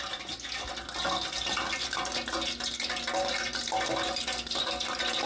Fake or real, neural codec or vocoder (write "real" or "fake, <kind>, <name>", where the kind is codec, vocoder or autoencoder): real